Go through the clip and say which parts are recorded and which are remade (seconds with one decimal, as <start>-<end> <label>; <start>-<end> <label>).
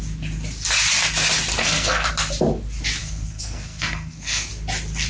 0.0-1.6 recorded; 1.6-2.1 remade; 2.1-3.0 recorded; 3.0-4.5 remade; 4.5-5.1 recorded